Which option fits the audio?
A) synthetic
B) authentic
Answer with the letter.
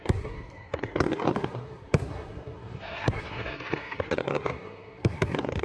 A